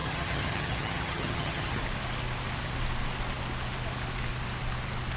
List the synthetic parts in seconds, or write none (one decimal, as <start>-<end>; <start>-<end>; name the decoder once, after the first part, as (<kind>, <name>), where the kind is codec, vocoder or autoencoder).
0.0-1.8 (vocoder, HiFi-GAN)